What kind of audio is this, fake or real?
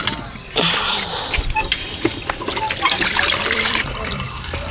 fake